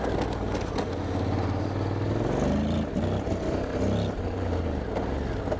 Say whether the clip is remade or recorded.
recorded